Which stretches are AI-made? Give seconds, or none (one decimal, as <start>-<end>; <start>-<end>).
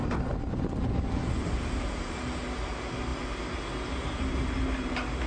none